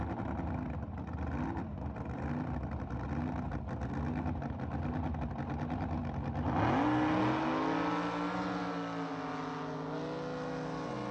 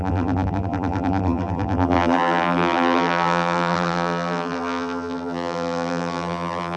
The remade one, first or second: second